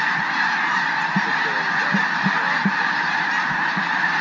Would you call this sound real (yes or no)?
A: yes